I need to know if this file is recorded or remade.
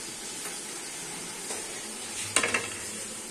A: recorded